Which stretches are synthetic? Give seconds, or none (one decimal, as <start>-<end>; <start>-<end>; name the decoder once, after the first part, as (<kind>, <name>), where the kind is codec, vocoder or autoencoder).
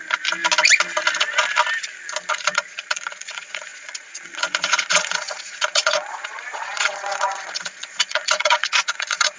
2.3-9.4 (vocoder, Vocos)